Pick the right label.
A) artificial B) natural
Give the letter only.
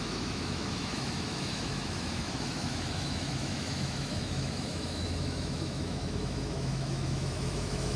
A